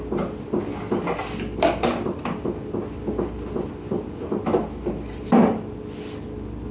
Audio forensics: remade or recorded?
remade